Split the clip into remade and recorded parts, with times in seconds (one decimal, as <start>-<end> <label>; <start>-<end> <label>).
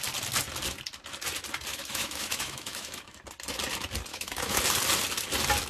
0.0-1.7 recorded; 1.7-3.2 remade; 3.2-4.1 recorded; 4.1-4.6 remade; 4.6-5.7 recorded